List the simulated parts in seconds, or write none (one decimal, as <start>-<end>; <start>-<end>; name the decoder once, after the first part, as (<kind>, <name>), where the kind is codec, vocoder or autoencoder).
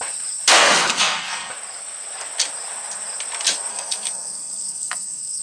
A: 0.6-1.5 (codec, SNAC); 3.7-5.4